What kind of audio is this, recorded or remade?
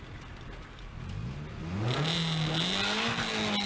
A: recorded